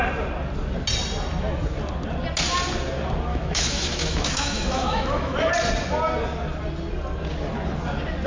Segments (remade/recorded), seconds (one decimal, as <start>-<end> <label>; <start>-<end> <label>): 0.0-3.3 recorded; 3.3-5.5 remade; 5.5-8.3 recorded